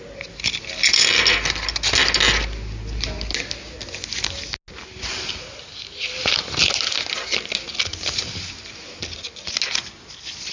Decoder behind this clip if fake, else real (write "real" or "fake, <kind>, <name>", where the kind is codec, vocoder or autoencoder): real